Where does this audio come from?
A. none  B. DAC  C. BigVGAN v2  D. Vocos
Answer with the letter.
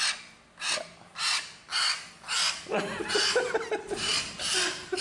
A